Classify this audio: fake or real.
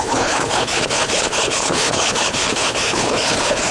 fake